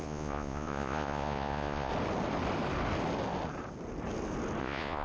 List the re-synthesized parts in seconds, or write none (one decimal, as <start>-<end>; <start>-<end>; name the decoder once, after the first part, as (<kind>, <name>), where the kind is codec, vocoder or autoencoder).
0.0-1.9 (vocoder, Vocos); 4.6-5.0